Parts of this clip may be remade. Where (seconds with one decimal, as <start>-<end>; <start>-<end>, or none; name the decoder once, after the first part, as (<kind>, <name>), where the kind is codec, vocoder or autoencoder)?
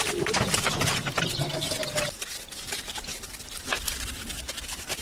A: 0.0-1.8 (vocoder, BigVGAN v2); 2.7-5.0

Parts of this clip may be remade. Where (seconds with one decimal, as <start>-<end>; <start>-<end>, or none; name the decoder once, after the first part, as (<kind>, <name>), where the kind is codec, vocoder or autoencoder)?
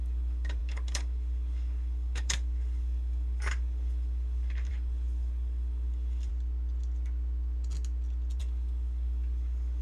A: 0.0-6.3 (codec, DAC); 8.4-9.8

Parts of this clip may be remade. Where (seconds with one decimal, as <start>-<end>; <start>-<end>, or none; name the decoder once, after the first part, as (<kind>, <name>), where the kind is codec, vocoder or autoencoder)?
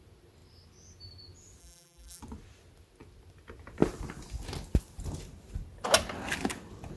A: 1.6-2.2 (vocoder, BigVGAN v2)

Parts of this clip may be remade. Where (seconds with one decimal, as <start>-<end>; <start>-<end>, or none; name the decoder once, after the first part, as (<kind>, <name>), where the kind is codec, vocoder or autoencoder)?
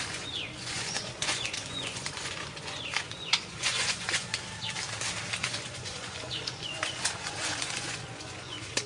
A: 0.0-4.3 (vocoder, Vocos); 5.4-8.9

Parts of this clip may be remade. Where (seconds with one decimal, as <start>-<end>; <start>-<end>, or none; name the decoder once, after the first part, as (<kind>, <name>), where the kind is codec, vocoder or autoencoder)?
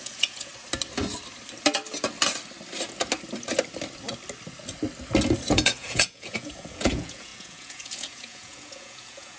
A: 0.0-0.5 (vocoder, Vocos); 5.5-9.4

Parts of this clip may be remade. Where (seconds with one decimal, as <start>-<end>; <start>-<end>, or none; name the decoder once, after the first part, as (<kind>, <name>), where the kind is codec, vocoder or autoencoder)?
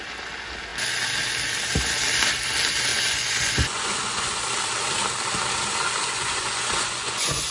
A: 2.9-4.4 (vocoder, Vocos); 5.8-7.5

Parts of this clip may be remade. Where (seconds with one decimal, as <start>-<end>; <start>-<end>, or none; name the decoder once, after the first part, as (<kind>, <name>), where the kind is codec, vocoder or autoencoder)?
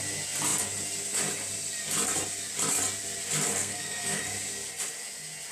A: 3.6-4.2 (codec, SNAC)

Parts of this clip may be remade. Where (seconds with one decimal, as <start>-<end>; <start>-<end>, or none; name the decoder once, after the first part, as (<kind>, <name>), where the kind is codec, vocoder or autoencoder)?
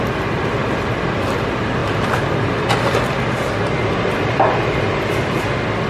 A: 0.0-5.9 (vocoder, BigVGAN v2)